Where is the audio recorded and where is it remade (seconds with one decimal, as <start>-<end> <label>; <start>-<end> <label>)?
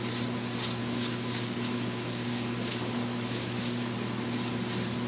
0.0-0.8 recorded; 0.8-3.9 remade; 3.9-5.1 recorded